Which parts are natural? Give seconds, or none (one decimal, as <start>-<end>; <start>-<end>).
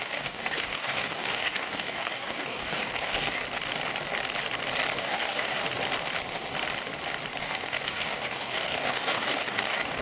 3.4-5.0; 5.6-7.4